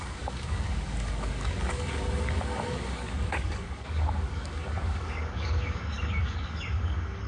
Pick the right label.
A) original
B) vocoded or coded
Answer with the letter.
B